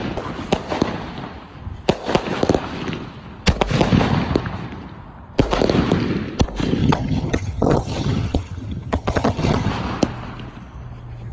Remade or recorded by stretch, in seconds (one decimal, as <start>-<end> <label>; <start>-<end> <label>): 0.0-6.8 recorded; 6.8-9.7 remade; 9.7-11.3 recorded